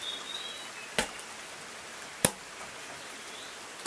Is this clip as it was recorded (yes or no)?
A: yes